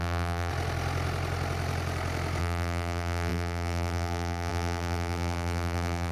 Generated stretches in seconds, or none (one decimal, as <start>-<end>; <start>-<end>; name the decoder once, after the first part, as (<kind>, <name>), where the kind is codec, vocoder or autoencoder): 0.0-0.5 (vocoder, BigVGAN v2); 2.4-6.1